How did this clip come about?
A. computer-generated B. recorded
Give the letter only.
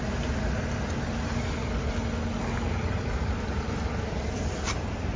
B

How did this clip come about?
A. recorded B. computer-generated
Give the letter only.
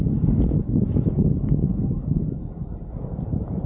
A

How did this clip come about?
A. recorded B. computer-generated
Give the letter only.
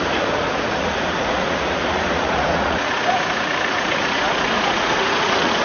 B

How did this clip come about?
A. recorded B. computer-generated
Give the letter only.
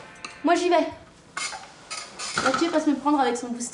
A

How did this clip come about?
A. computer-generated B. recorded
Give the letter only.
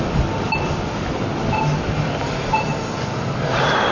A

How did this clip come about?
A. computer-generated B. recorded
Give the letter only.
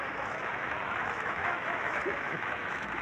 A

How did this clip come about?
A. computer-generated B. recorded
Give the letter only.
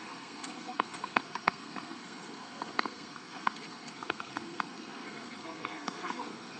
A